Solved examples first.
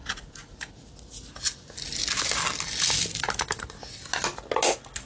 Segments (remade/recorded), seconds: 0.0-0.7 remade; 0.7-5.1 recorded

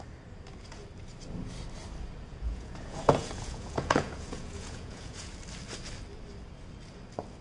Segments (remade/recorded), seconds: 0.0-2.3 recorded; 2.3-5.3 remade; 5.3-7.4 recorded

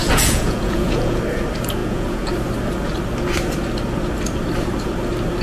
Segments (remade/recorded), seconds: 0.0-1.2 remade; 1.2-1.8 recorded; 1.8-2.3 remade; 2.3-5.4 recorded